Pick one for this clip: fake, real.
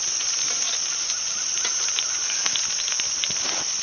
real